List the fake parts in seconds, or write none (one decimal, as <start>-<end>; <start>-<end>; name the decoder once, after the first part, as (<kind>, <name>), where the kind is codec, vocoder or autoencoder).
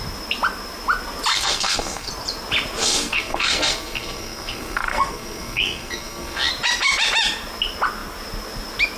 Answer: 1.3-2.1 (codec, SNAC); 2.8-6.5